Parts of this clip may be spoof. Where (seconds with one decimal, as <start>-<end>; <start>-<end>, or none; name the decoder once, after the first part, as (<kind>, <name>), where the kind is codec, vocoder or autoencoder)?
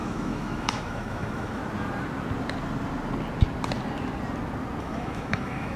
0.0-1.6 (autoencoder, DAC-VAE); 4.8-5.8